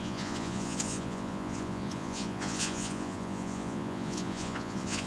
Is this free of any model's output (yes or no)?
no